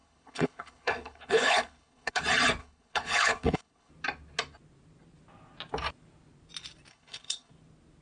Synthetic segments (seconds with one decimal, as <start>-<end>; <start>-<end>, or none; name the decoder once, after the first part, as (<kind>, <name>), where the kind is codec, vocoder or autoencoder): 0.0-2.2 (codec, HILCodec); 2.6-3.9; 6.9-7.5